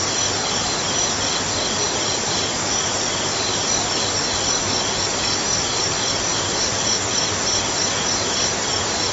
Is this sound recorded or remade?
recorded